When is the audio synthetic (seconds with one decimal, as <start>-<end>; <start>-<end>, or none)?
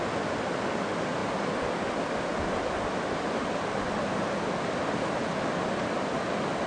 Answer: none